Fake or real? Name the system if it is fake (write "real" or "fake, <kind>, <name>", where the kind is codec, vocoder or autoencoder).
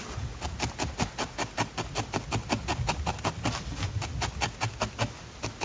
real